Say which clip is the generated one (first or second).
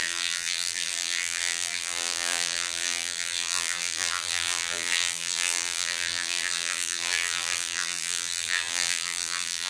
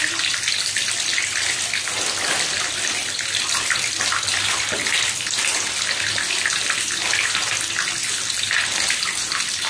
first